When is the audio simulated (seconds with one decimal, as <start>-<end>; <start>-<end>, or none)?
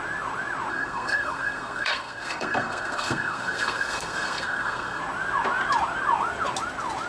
0.7-5.0